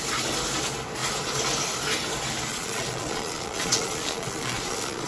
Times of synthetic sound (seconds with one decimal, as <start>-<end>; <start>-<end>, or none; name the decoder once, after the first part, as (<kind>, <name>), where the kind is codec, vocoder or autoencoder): 2.5-5.1 (vocoder, Vocos)